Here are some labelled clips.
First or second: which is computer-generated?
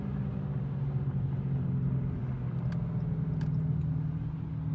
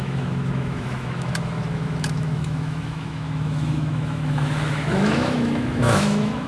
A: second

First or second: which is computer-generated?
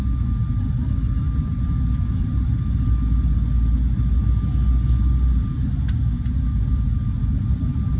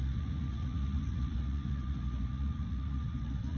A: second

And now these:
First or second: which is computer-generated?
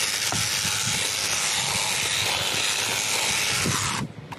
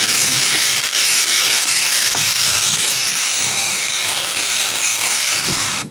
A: second